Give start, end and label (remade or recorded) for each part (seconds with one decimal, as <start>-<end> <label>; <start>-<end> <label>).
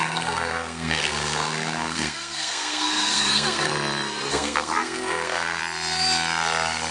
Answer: 0.0-3.7 remade; 3.7-4.3 recorded; 4.3-5.6 remade; 5.6-6.9 recorded